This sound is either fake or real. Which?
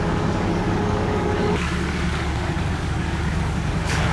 fake